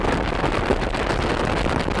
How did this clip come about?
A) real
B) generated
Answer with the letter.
A